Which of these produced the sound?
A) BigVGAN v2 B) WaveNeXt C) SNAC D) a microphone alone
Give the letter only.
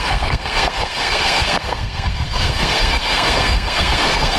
C